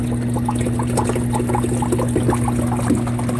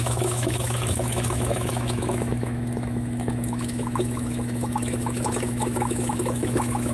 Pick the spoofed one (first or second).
second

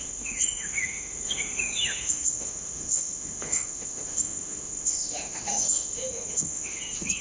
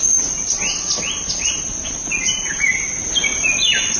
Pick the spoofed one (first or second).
first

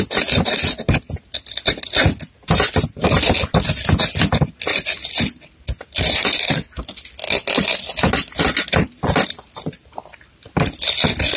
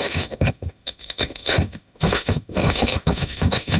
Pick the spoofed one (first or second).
second